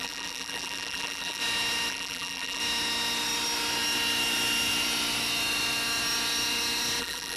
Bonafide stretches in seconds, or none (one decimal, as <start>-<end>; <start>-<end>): 1.4-1.9; 2.6-7.0